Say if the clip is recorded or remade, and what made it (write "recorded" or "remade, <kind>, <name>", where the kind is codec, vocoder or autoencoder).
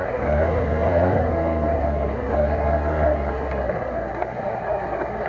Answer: remade, codec, SNAC